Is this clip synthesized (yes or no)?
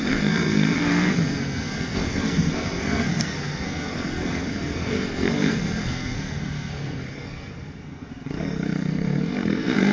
yes